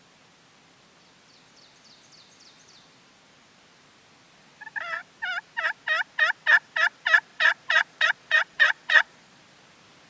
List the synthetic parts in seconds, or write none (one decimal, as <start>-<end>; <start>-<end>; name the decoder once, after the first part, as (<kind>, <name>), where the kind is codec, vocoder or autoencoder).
7.3-9.4 (vocoder, Vocos)